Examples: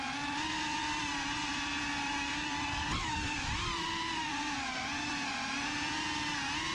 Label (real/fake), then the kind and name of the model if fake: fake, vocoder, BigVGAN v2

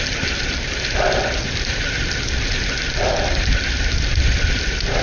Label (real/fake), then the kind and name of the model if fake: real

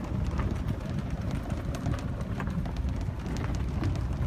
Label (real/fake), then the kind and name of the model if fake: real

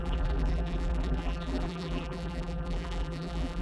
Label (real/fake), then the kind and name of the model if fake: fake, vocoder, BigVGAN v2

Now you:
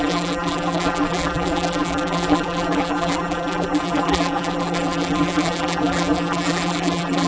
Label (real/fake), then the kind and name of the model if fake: fake, vocoder, BigVGAN v2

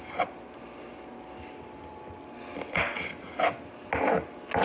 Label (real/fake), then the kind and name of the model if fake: real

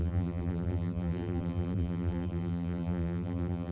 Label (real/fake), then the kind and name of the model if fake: fake, vocoder, BigVGAN v2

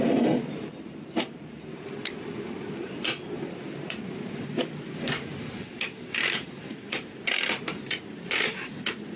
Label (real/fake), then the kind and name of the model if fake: fake, vocoder, BigVGAN v2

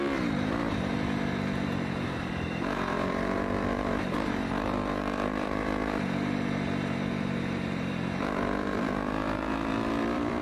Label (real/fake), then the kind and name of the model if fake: fake, vocoder, BigVGAN v2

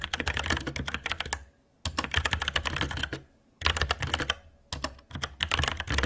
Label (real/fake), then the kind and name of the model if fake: real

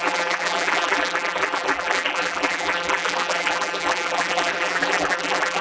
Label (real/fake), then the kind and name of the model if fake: fake, vocoder, BigVGAN v2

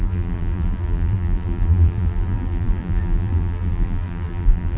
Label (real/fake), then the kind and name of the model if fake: fake, vocoder, BigVGAN v2